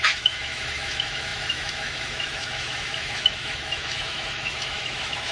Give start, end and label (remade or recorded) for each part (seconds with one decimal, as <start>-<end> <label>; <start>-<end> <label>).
0.0-5.3 remade